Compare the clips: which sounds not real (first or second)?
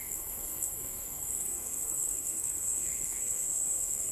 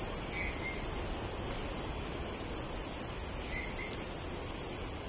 first